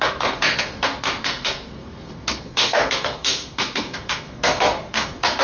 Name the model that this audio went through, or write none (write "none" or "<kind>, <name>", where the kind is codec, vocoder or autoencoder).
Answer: codec, SNAC